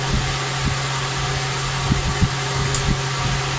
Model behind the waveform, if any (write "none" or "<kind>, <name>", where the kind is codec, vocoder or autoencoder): none